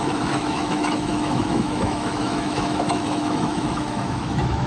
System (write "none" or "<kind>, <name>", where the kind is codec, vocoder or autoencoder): autoencoder, DAC-VAE